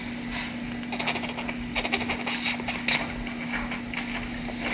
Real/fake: real